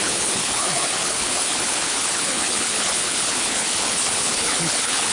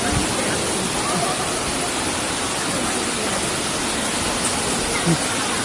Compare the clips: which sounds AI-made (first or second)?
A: first